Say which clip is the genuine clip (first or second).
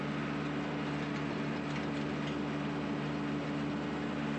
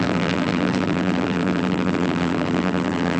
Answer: first